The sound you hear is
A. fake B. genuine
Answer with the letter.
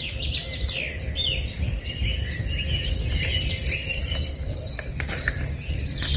B